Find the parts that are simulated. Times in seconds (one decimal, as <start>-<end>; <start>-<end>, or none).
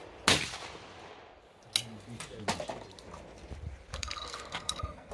3.9-5.1